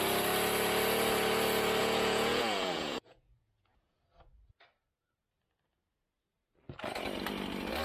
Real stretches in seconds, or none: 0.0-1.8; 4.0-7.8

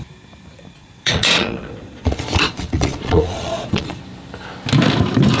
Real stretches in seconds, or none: 0.0-0.8; 4.0-5.4

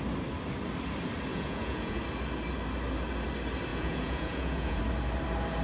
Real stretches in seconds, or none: 0.0-1.3; 2.0-3.7; 4.8-5.6

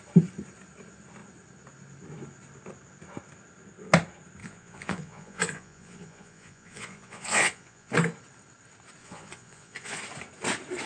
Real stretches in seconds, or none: 0.0-4.4; 7.9-9.0; 10.0-10.9

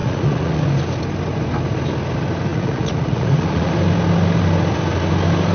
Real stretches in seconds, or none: 0.6-2.5; 3.7-5.5